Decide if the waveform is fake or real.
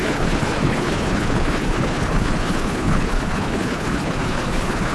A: fake